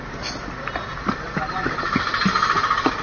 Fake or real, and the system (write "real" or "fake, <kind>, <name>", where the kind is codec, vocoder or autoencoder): real